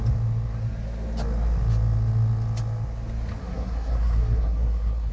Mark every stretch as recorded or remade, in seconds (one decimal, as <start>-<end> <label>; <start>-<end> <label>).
0.0-3.4 recorded; 3.4-5.1 remade